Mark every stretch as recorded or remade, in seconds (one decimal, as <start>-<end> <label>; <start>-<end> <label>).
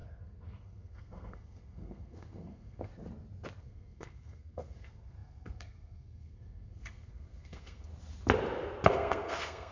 0.0-2.9 remade; 2.9-3.6 recorded; 3.6-7.9 remade; 7.9-8.9 recorded; 8.9-9.7 remade